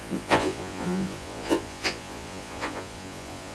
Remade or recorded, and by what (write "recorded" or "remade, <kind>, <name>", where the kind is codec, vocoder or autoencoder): remade, vocoder, Vocos